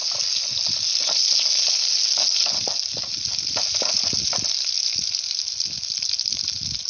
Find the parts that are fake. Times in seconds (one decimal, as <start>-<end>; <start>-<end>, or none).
none